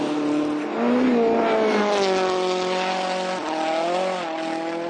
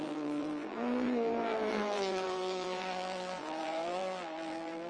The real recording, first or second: first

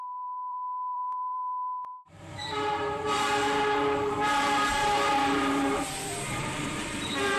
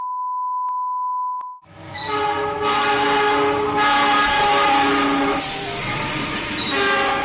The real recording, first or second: second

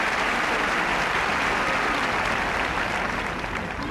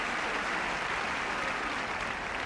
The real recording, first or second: first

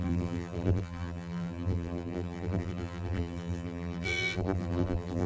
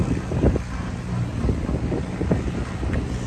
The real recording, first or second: second